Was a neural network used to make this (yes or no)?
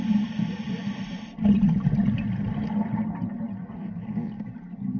no